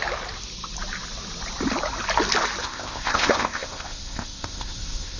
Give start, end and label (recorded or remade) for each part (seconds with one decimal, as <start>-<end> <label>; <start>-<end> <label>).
0.0-2.6 recorded; 2.6-5.2 remade